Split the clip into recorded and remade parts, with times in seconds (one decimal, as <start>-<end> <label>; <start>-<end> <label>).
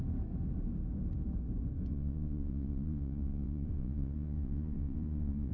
0.0-1.9 recorded; 1.9-5.5 remade